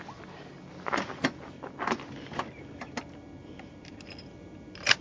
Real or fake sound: real